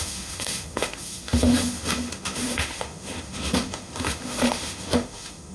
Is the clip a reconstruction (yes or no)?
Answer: yes